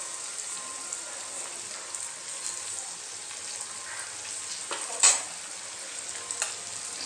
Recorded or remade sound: recorded